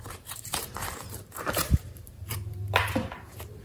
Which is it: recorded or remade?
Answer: remade